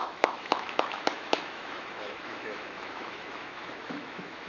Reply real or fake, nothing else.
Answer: fake